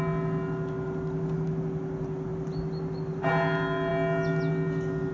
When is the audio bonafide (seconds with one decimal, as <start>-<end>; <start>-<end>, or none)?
0.0-5.1